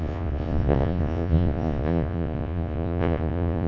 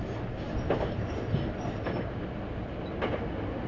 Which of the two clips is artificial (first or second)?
first